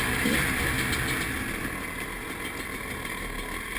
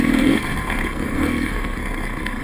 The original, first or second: first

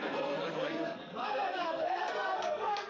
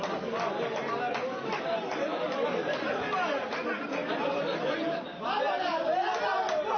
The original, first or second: second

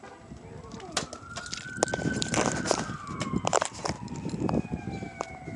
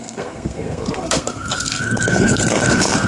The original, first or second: first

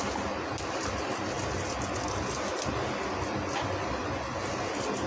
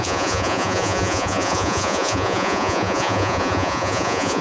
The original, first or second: first